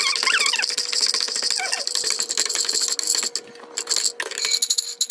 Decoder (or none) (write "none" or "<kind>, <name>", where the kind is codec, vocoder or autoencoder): none